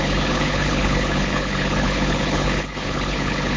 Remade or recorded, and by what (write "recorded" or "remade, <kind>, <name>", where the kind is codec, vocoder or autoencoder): remade, codec, HILCodec